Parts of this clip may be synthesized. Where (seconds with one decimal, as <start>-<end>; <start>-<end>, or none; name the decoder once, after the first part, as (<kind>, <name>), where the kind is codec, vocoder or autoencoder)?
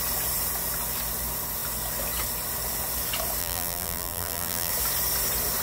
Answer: 3.4-4.7 (vocoder, BigVGAN v2)